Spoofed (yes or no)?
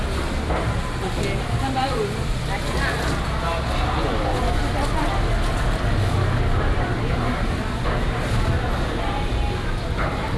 no